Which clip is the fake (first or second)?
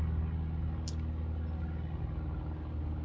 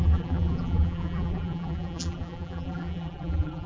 second